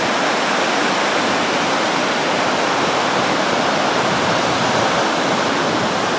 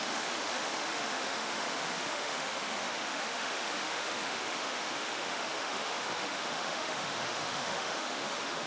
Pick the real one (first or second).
first